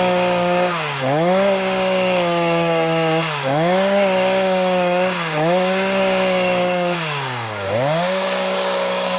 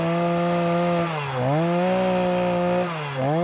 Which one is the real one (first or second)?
second